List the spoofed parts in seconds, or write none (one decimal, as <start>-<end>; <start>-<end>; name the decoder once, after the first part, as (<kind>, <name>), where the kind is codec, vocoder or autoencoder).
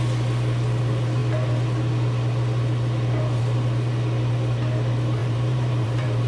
5.2-6.3 (vocoder, BigVGAN v2)